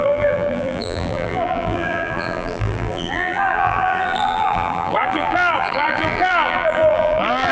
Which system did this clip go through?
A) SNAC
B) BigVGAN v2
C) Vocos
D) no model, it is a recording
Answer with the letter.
B